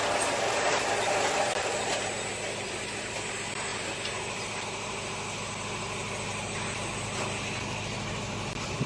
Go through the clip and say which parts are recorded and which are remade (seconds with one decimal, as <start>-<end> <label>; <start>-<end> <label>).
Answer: 0.0-1.5 remade; 1.5-3.7 recorded; 3.7-4.4 remade; 4.4-8.9 recorded